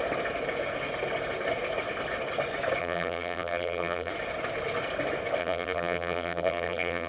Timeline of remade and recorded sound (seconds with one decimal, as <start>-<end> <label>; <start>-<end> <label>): 0.0-2.8 recorded; 2.8-4.1 remade; 4.1-5.4 recorded; 5.4-7.1 remade